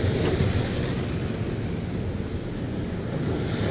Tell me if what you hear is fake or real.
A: real